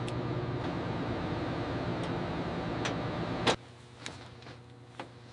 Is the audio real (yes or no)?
yes